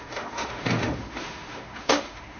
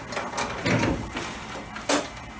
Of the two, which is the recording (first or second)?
second